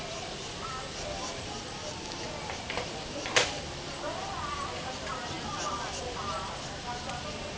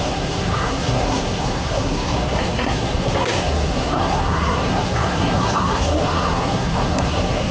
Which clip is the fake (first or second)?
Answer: second